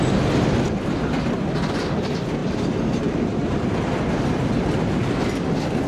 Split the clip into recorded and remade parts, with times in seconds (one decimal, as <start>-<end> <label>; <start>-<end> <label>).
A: 0.0-5.9 recorded